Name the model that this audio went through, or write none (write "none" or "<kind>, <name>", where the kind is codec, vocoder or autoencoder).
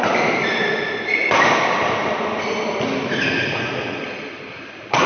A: none